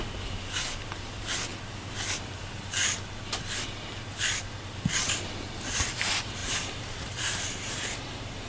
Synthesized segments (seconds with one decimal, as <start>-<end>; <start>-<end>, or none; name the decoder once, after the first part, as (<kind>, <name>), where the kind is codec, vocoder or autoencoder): 6.4-7.7 (vocoder, BigVGAN v2)